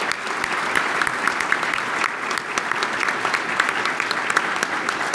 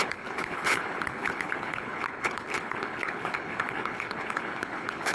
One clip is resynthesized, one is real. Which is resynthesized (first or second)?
second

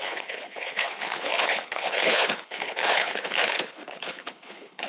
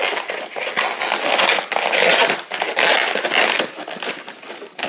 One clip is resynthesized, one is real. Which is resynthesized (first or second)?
first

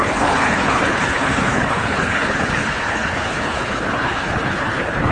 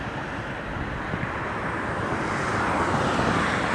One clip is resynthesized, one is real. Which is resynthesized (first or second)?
first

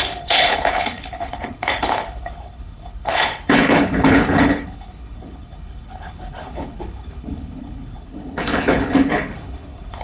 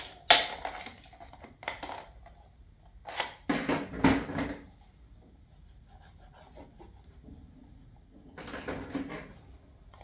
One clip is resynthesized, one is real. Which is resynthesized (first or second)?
first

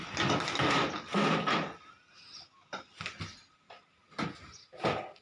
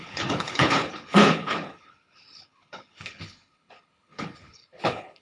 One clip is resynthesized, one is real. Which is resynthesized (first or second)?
second